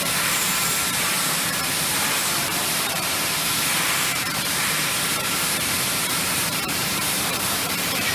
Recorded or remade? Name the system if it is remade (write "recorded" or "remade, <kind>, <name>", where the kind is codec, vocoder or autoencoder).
remade, vocoder, BigVGAN v2